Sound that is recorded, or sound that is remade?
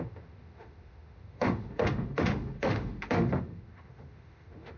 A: remade